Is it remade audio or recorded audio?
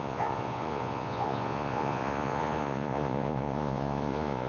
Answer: remade